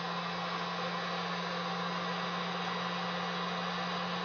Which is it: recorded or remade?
recorded